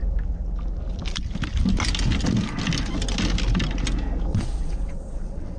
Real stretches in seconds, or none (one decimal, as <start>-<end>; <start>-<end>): 0.0-4.3